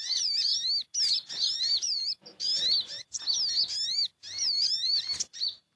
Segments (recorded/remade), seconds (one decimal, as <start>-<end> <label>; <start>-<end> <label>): 0.0-0.5 remade; 0.5-1.1 recorded; 1.1-2.5 remade; 2.5-3.9 recorded; 3.9-5.8 remade